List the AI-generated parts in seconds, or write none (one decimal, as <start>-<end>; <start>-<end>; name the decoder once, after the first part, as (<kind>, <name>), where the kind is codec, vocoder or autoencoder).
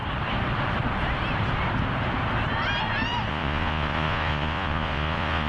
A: 3.3-5.5 (vocoder, Vocos)